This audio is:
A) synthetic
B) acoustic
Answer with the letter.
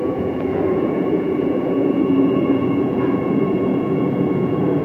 A